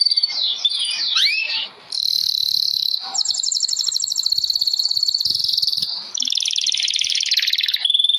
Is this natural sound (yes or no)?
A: no